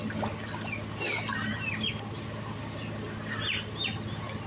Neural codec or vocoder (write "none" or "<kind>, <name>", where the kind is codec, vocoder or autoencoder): none